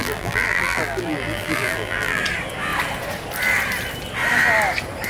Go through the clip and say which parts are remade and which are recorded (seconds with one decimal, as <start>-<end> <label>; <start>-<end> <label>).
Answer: 0.0-2.2 remade; 2.2-5.1 recorded